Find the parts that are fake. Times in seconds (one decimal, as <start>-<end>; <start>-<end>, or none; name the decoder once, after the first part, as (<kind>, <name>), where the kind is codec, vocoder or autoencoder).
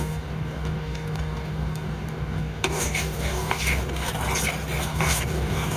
0.0-4.1 (codec, DAC); 4.8-5.8